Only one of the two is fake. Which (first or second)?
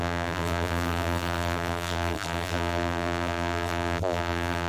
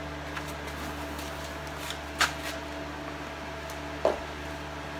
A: first